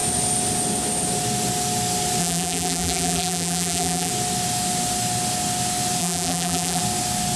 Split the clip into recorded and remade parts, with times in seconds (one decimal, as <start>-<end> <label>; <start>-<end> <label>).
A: 0.0-2.2 recorded; 2.2-4.1 remade; 4.1-6.0 recorded; 6.0-6.8 remade; 6.8-7.4 recorded